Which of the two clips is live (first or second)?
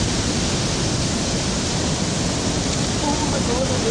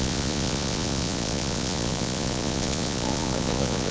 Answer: first